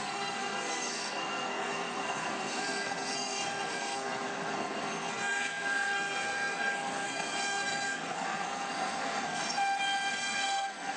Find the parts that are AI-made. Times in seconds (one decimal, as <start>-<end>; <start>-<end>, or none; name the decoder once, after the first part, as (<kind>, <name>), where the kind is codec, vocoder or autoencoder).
0.0-9.4 (codec, SNAC); 10.1-11.0